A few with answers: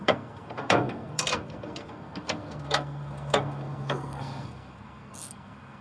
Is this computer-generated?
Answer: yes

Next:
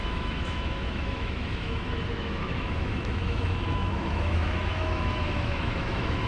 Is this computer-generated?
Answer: yes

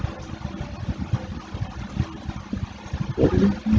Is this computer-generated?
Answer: no